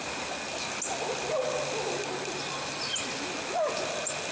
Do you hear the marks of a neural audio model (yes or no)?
no